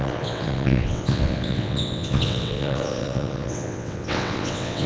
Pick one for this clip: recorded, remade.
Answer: remade